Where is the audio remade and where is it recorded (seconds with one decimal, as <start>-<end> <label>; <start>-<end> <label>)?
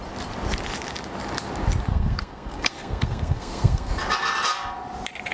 0.0-1.9 recorded; 1.9-3.9 remade; 3.9-5.3 recorded